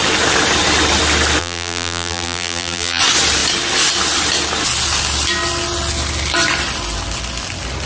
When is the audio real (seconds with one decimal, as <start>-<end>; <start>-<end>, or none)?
0.0-1.4; 3.0-7.9